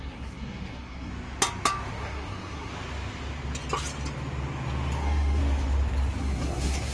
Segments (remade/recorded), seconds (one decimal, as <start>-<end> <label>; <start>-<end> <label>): 0.0-1.1 remade; 1.1-1.9 recorded; 1.9-2.7 remade; 2.7-5.0 recorded; 5.0-5.4 remade; 5.4-6.2 recorded; 6.2-6.9 remade

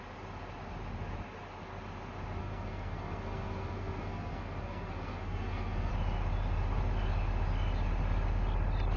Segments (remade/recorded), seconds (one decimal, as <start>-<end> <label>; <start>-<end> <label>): 0.0-2.4 recorded; 2.4-5.9 remade; 5.9-9.0 recorded

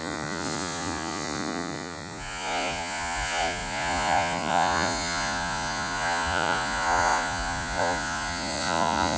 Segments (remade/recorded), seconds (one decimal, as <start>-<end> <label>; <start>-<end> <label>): 0.0-9.2 remade

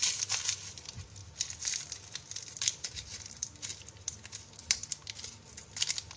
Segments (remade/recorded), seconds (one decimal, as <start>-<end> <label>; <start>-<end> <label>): 0.0-6.2 recorded